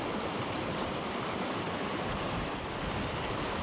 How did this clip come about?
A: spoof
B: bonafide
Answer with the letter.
A